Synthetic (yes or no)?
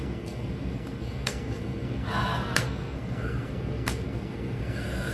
yes